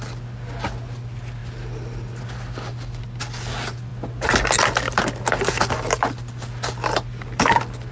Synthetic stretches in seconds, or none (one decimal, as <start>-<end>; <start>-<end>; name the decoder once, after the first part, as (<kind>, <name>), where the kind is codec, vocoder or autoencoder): none